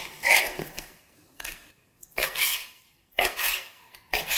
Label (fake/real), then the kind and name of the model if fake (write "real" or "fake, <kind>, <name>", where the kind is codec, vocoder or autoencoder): fake, codec, SNAC